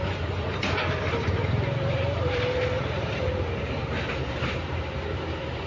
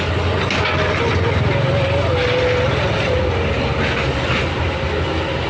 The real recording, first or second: second